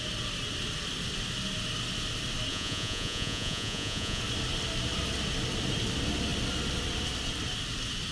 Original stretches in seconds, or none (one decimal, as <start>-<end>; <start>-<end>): 0.0-2.5; 4.2-8.1